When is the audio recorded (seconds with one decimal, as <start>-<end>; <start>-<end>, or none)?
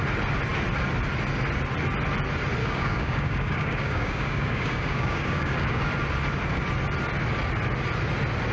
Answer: 0.0-2.6; 5.9-8.5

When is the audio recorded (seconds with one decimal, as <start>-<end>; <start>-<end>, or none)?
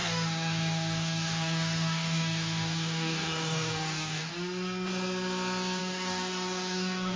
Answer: 4.3-5.8